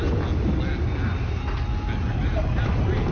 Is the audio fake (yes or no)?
no